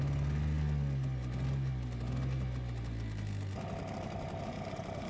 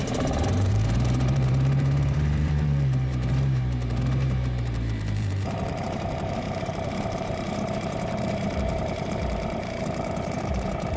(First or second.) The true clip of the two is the first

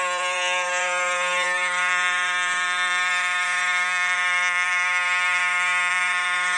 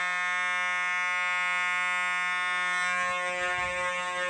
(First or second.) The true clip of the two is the second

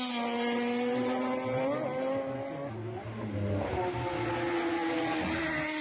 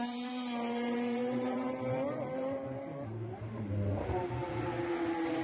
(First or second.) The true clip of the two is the first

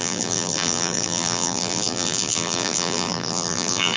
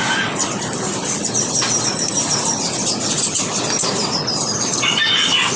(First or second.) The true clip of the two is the second